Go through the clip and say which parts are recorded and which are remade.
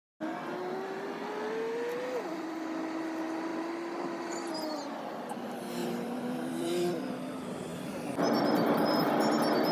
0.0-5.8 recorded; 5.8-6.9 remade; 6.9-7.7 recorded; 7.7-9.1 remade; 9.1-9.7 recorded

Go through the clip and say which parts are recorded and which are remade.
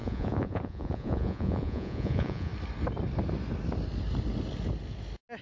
0.0-2.5 remade; 2.5-5.4 recorded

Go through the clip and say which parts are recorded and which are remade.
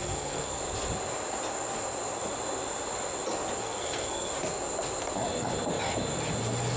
0.0-0.6 remade; 0.6-3.6 recorded; 3.6-4.3 remade; 4.3-6.8 recorded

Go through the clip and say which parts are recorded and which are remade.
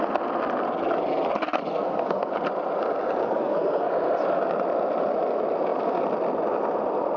0.0-1.7 recorded; 1.7-2.3 remade; 2.3-3.2 recorded; 3.2-3.9 remade; 3.9-7.2 recorded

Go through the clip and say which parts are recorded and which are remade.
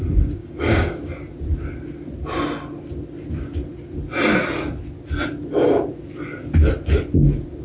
0.0-0.4 recorded; 0.4-1.1 remade; 1.1-7.6 recorded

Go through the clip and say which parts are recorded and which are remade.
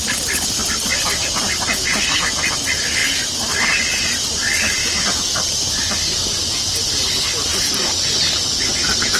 0.0-9.2 recorded